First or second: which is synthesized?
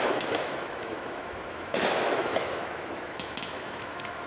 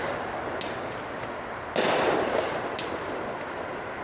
first